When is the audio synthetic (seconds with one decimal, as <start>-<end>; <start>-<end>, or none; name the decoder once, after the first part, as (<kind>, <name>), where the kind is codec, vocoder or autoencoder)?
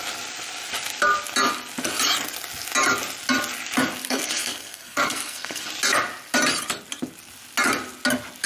4.0-5.7 (codec, SNAC)